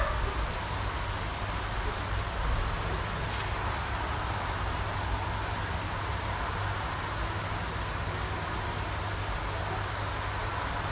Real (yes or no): yes